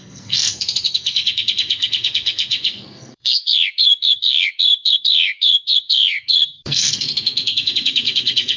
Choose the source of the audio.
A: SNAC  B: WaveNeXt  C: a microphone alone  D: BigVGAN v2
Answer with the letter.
A